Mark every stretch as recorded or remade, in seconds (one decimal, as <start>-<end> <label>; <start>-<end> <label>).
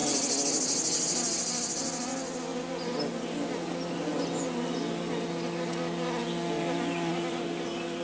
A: 0.0-8.0 recorded